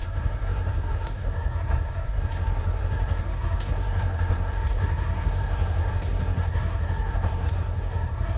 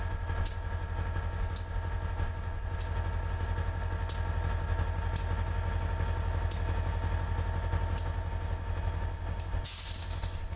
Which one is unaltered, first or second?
second